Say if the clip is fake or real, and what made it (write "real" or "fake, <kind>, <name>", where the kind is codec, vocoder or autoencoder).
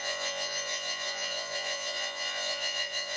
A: fake, vocoder, Vocos